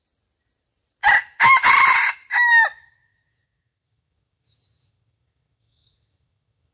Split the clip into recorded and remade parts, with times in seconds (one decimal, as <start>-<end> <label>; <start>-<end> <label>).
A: 0.0-2.5 recorded; 2.5-6.7 remade